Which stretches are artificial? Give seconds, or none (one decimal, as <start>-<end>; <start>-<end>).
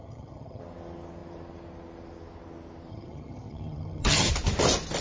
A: 0.0-0.6; 2.9-4.3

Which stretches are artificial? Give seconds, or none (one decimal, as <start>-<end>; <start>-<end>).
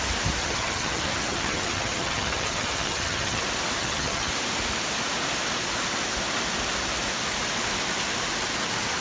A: 0.4-3.4; 3.8-4.3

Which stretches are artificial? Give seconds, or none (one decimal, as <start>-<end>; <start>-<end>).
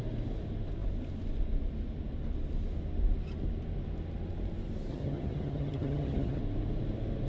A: 4.9-6.4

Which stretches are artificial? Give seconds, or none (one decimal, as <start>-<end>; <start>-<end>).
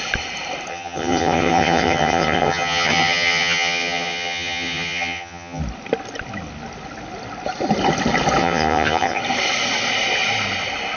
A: 0.7-5.6; 8.4-9.2